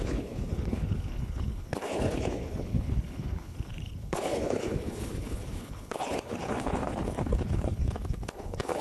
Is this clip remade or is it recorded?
remade